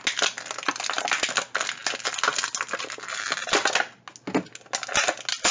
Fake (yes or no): no